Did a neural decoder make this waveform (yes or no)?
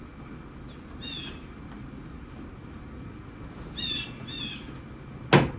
no